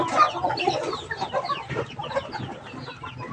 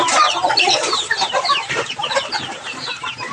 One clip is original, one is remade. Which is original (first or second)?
first